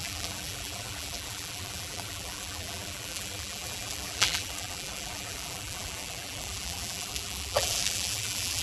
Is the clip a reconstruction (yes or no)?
yes